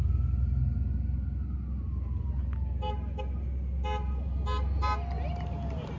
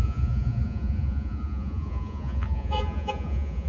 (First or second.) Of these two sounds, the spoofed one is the second